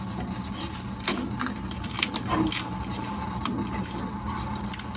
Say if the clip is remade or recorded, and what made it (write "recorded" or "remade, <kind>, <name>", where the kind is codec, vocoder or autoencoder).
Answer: recorded